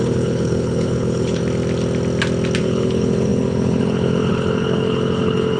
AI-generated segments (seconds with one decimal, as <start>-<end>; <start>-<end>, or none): 0.0-1.4; 2.6-5.6